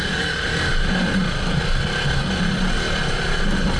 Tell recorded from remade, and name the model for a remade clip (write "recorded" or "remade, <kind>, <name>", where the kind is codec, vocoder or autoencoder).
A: recorded